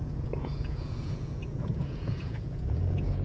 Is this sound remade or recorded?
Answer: remade